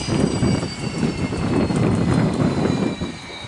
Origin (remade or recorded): remade